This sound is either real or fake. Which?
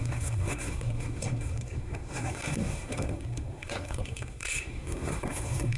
fake